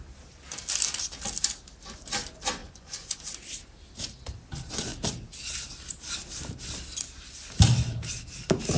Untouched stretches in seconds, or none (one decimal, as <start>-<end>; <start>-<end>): 0.0-2.6; 3.2-8.8